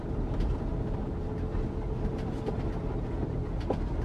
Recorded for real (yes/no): yes